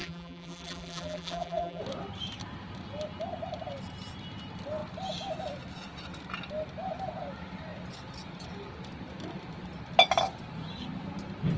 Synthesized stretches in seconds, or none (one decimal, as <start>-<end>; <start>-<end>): 0.0-1.8